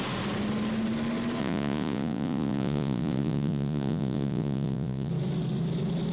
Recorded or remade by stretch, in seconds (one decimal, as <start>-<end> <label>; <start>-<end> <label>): 0.0-1.4 recorded; 1.4-5.1 remade; 5.1-6.1 recorded